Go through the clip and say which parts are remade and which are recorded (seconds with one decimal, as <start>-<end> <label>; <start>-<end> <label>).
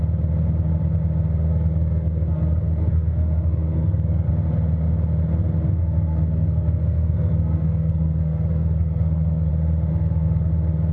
0.0-1.5 recorded; 1.5-4.3 remade; 4.3-5.8 recorded; 5.8-9.5 remade; 9.5-9.9 recorded; 9.9-10.5 remade; 10.5-10.9 recorded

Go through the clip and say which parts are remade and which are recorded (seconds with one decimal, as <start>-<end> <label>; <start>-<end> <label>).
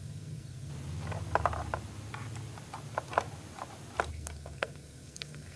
0.0-0.7 remade; 0.7-4.1 recorded; 4.1-5.6 remade